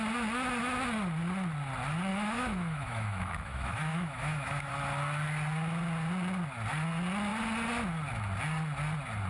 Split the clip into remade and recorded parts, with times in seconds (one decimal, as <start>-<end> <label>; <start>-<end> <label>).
0.0-2.1 recorded; 2.1-4.7 remade; 4.7-9.3 recorded

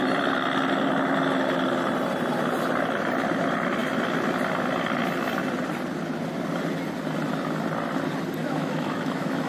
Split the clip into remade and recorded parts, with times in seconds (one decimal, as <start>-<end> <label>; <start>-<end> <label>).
0.0-8.4 recorded; 8.4-9.5 remade

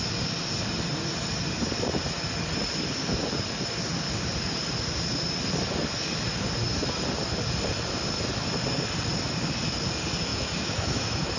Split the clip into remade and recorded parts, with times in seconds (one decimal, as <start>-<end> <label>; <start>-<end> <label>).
0.0-10.3 recorded; 10.3-11.4 remade